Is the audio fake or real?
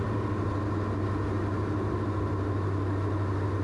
real